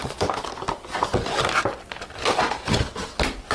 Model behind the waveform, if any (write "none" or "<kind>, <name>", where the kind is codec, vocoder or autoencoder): none